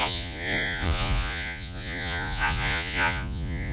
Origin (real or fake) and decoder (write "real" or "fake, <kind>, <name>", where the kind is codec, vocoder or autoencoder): fake, vocoder, Vocos